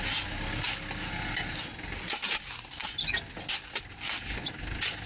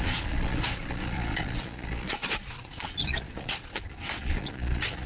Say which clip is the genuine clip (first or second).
first